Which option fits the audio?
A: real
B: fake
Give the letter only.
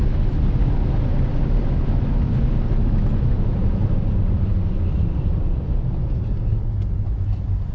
A